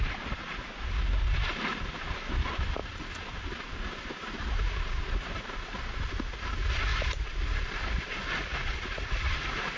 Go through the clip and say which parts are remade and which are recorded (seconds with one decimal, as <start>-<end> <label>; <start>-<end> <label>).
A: 0.0-2.8 recorded; 2.8-4.1 remade; 4.1-6.9 recorded; 6.9-9.8 remade